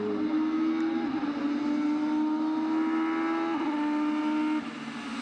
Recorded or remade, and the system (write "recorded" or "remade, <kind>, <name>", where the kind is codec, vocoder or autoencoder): recorded